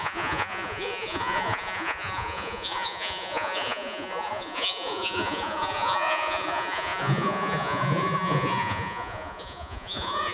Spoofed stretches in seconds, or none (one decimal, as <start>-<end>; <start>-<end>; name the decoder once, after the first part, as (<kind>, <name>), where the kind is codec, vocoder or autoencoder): 0.0-10.3 (vocoder, Vocos)